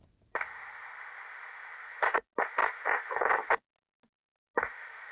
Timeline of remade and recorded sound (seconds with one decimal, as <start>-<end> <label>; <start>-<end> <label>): 0.0-5.1 recorded